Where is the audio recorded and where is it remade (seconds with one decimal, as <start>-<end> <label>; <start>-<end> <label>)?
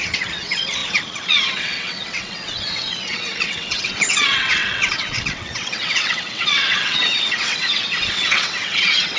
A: 0.0-9.2 remade